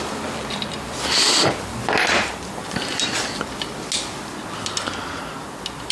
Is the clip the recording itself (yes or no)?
yes